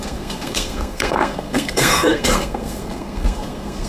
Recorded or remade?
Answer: remade